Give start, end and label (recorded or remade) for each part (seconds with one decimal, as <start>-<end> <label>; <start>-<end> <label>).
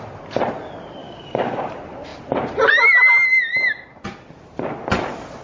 0.0-1.0 recorded; 1.0-1.7 remade; 1.7-5.4 recorded